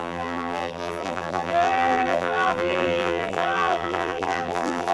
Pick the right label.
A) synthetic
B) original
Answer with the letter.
A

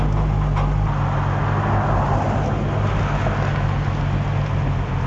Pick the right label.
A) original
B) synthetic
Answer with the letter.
A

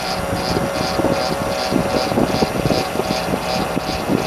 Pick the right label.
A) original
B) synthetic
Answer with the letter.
A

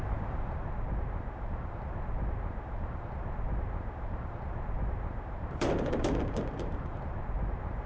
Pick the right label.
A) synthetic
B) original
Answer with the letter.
A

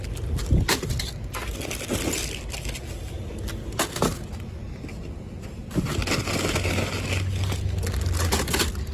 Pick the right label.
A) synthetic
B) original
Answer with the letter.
B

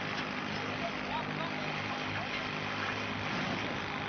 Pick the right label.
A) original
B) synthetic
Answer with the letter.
A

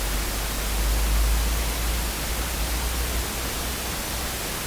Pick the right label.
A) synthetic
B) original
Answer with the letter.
B